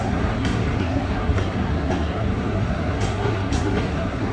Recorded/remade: remade